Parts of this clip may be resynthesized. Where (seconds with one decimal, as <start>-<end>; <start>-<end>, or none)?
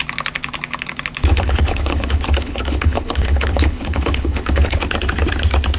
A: 1.3-4.8